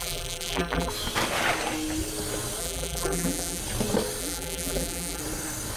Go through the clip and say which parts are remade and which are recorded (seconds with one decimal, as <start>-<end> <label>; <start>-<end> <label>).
0.0-0.9 remade; 0.9-2.6 recorded; 2.6-3.6 remade; 3.6-4.2 recorded; 4.2-5.2 remade; 5.2-5.8 recorded